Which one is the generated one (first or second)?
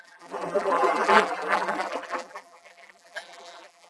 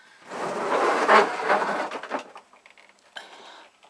first